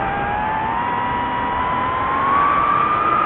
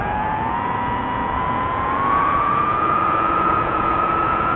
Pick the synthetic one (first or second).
second